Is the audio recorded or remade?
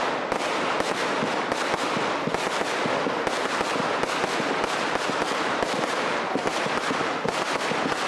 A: recorded